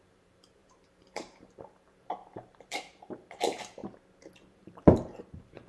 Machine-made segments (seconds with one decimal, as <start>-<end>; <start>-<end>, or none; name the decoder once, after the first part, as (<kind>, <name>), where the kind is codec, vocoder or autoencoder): 0.0-3.8 (vocoder, BigVGAN v2); 4.5-5.7